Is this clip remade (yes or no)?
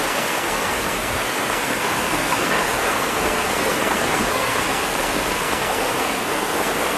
yes